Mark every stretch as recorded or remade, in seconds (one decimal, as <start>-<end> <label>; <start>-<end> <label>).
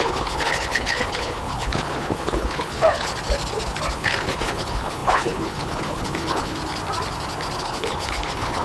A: 0.0-3.1 remade; 3.1-3.9 recorded; 3.9-6.6 remade; 6.6-7.6 recorded; 7.6-8.6 remade